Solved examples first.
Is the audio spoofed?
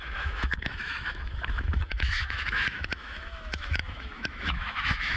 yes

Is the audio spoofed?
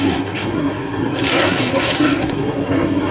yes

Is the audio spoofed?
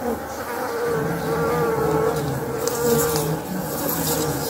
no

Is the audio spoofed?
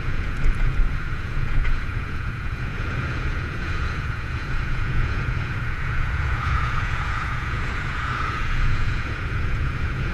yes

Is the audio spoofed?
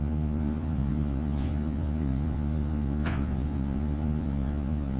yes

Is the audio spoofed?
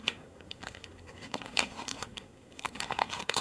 yes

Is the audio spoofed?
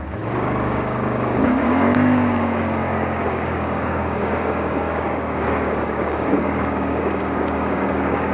yes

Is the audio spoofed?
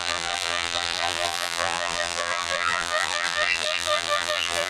yes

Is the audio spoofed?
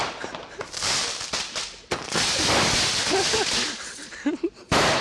no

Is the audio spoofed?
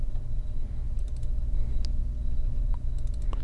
no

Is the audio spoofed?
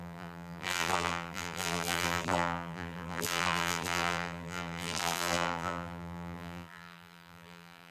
yes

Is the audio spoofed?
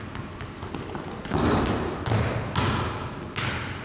no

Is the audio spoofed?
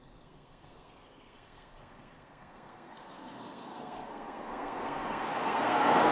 yes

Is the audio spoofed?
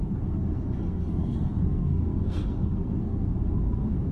yes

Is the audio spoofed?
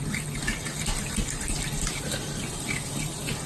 no